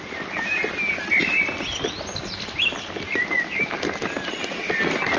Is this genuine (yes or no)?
yes